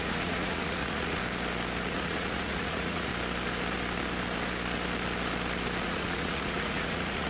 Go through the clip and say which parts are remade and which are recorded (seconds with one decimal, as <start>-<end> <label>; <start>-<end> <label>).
0.0-1.2 remade; 1.2-1.9 recorded; 1.9-3.1 remade; 3.1-5.8 recorded; 5.8-7.3 remade